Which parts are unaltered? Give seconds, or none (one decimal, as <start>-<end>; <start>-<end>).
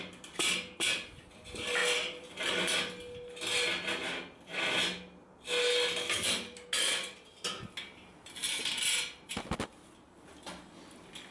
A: 0.0-11.3